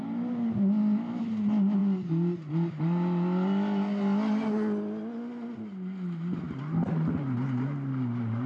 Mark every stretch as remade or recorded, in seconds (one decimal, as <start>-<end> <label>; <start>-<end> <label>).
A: 0.0-8.5 recorded